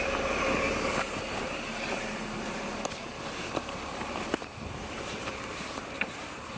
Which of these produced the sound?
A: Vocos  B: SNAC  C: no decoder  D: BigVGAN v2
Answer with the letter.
D